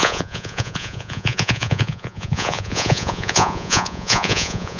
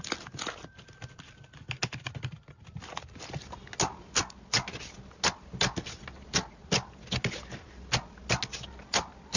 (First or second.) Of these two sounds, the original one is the second